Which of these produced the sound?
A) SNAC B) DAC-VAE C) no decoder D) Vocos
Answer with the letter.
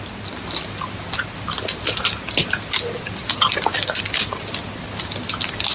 C